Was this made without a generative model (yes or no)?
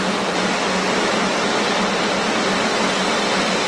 yes